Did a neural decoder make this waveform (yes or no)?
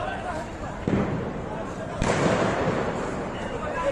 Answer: yes